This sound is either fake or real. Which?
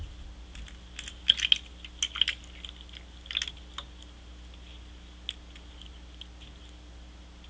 real